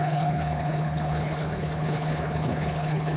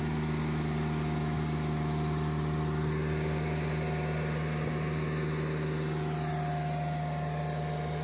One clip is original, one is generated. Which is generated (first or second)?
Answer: first